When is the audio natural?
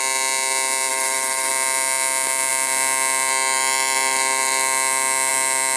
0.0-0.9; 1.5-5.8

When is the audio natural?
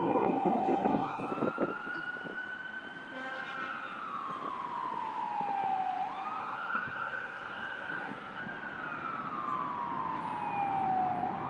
1.3-6.4; 8.4-11.5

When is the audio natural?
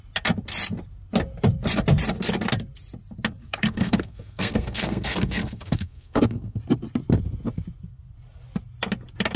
0.0-3.4; 6.6-9.4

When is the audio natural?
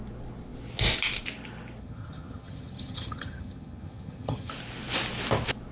0.0-1.8; 4.5-5.7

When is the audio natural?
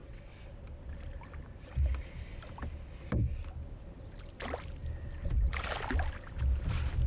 0.5-7.1